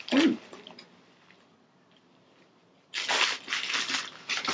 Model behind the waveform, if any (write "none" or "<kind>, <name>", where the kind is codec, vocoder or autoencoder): none